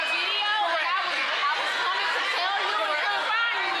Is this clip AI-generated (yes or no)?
no